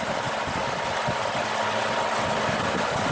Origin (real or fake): real